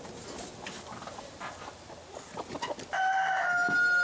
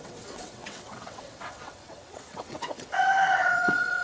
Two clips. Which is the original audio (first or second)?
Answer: first